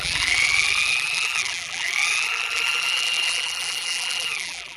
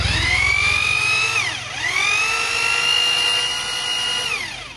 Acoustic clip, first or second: second